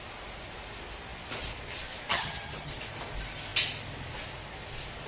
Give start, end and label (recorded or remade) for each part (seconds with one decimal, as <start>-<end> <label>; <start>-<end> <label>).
0.0-2.1 recorded; 2.1-2.7 remade; 2.7-5.1 recorded